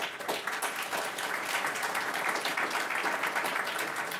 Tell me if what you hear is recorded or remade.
recorded